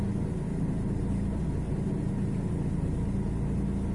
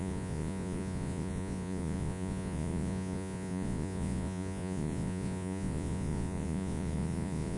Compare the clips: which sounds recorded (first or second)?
first